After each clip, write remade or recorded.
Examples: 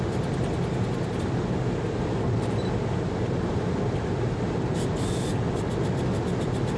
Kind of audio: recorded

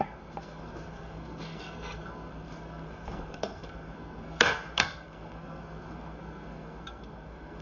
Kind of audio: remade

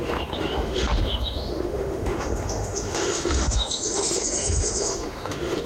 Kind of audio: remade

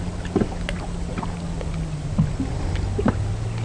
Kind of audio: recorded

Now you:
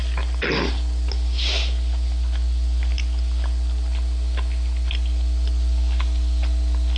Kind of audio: recorded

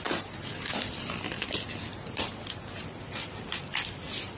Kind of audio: recorded